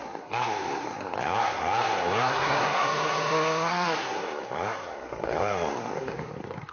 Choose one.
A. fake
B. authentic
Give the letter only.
A